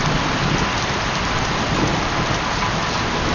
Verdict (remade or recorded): recorded